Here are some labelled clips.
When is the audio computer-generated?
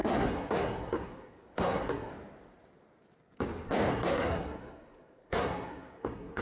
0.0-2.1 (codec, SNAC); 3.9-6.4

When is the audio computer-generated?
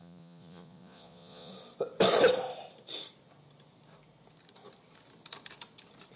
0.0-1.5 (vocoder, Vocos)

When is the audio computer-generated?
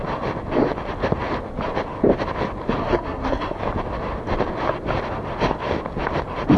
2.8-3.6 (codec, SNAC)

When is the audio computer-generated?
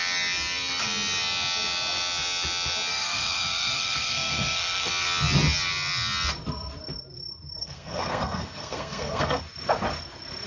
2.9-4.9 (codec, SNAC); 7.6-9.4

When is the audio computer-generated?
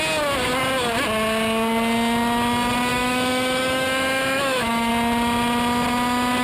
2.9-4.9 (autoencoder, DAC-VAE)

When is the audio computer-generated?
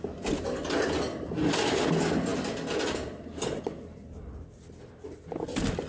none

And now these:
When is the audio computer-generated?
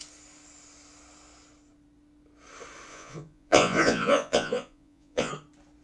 2.9-5.3 (vocoder, Vocos)